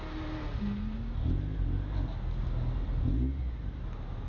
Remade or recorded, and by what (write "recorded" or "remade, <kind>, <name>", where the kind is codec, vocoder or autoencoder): recorded